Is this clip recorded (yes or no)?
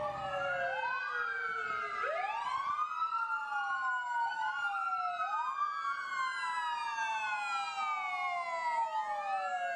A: yes